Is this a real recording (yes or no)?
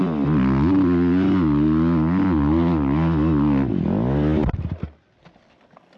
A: yes